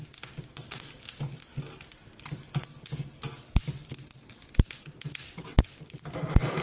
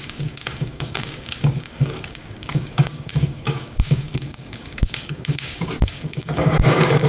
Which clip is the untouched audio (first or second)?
first